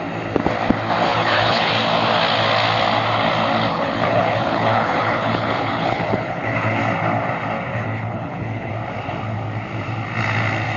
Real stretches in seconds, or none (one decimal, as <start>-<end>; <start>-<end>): 0.0-1.1; 1.7-3.7; 6.8-7.7; 8.7-10.8